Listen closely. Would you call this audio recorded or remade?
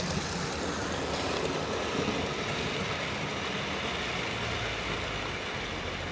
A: recorded